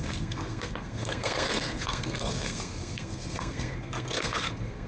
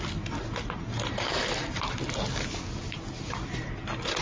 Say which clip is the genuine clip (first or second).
second